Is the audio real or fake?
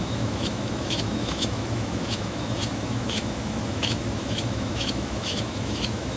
fake